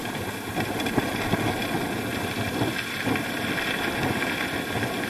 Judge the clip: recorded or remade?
recorded